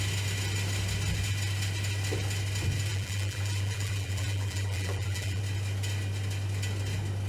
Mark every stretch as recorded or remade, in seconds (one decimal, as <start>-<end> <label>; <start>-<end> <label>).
0.0-2.9 recorded; 2.9-5.4 remade; 5.4-7.3 recorded